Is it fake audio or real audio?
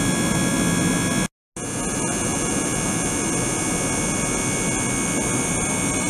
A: real